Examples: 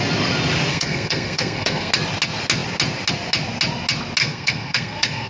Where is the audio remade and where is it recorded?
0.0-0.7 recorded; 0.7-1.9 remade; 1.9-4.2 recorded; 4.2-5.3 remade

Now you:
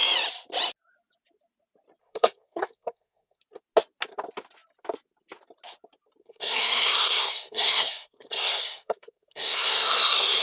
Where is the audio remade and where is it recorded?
0.0-2.0 recorded; 2.0-3.4 remade; 3.4-6.2 recorded; 6.2-10.4 remade

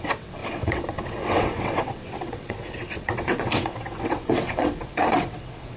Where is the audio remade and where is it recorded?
0.0-5.8 remade

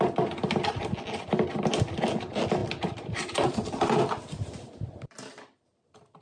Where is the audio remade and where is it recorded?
0.0-6.2 recorded